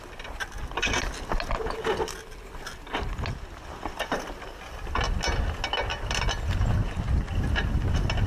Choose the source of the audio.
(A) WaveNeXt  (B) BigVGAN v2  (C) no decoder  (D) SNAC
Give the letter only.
C